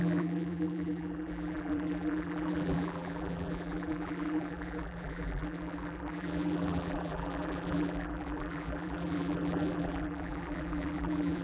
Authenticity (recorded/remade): remade